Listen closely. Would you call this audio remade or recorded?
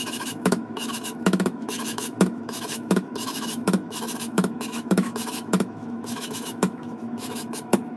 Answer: remade